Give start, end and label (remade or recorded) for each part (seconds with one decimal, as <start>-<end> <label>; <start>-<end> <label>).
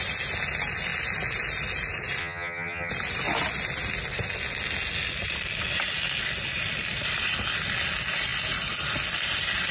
0.0-2.2 recorded; 2.2-2.9 remade; 2.9-9.7 recorded